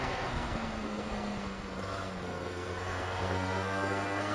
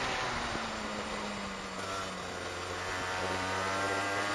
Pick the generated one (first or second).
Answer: first